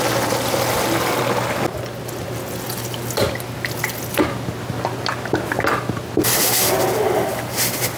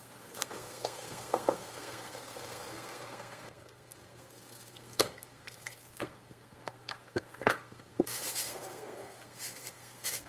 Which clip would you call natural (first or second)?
first